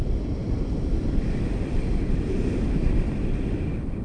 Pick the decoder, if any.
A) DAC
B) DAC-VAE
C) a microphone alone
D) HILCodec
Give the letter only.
C